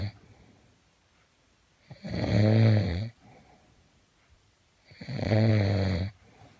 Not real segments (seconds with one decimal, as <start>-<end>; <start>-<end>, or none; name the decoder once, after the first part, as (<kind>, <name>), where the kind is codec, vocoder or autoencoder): 2.9-5.5 (vocoder, Vocos)